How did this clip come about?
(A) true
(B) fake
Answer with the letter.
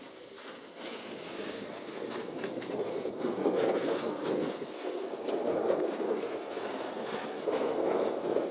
B